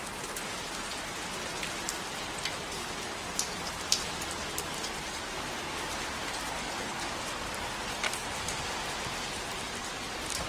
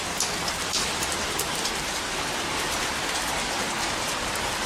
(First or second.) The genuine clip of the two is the first